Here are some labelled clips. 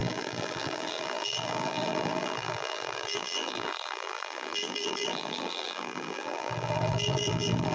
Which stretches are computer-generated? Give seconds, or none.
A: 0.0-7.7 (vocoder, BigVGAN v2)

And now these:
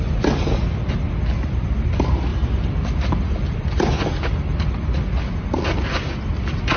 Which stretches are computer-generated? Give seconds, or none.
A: none

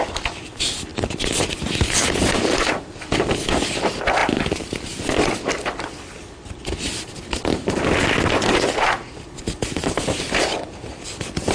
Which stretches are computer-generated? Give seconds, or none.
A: none